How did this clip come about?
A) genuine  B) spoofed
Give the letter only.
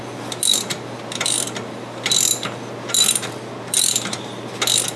A